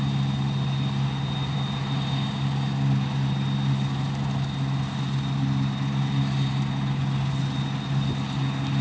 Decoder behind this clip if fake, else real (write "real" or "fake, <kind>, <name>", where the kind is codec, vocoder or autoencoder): real